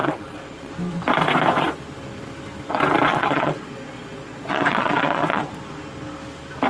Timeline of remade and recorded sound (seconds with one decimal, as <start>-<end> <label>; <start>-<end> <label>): 0.0-0.7 remade; 0.7-3.1 recorded; 3.1-5.5 remade; 5.5-6.7 recorded